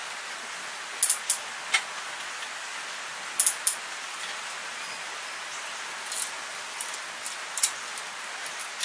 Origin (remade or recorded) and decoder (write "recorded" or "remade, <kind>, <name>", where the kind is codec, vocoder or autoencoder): recorded